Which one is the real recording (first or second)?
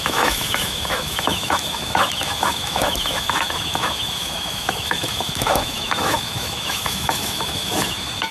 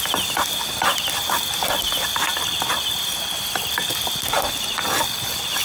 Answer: second